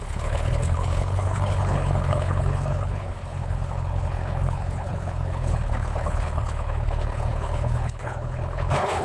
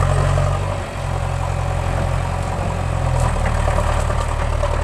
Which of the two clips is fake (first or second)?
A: first